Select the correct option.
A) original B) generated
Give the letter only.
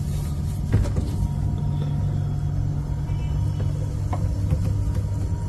A